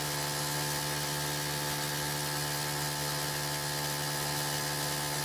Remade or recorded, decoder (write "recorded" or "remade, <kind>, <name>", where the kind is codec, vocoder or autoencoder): recorded